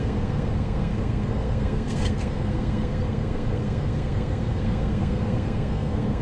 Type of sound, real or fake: fake